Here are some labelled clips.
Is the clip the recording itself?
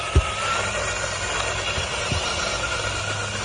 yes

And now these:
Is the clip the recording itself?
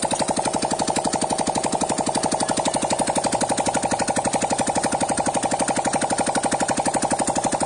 yes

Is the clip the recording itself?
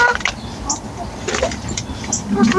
yes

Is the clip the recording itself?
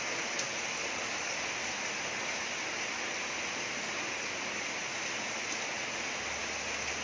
yes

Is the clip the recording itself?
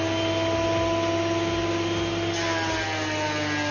yes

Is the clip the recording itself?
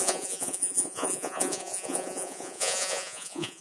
no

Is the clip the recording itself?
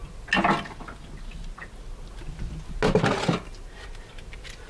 yes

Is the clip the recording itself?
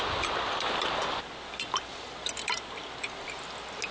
yes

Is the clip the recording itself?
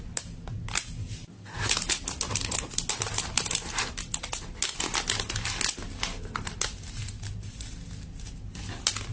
yes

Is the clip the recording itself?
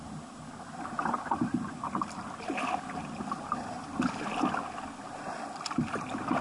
yes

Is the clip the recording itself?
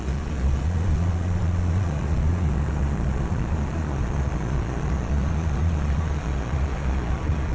no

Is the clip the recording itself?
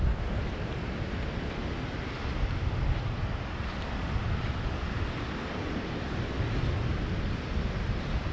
yes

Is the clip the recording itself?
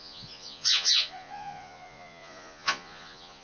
no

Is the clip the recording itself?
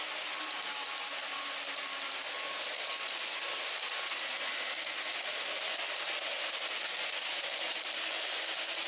yes